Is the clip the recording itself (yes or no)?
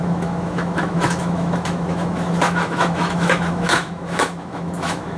no